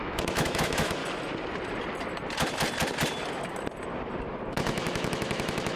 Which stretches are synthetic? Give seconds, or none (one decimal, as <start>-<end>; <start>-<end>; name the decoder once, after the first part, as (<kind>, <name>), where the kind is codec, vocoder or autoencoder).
0.0-1.0 (autoencoder, DAC-VAE); 4.5-5.8